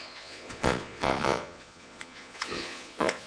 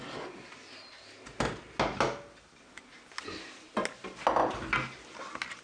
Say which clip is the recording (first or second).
second